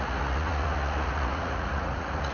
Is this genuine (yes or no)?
no